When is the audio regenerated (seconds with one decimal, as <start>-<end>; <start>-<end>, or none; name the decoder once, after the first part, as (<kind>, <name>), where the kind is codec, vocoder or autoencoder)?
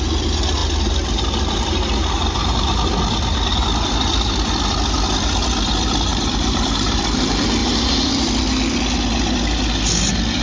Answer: 6.1-7.0 (vocoder, BigVGAN v2); 7.6-8.1